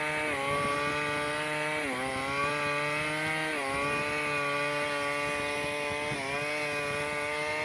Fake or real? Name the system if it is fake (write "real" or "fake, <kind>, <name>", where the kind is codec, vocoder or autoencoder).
real